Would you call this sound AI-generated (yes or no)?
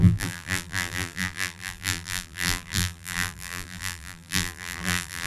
yes